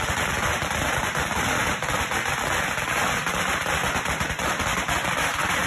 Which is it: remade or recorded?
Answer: recorded